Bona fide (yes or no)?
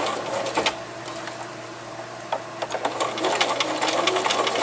yes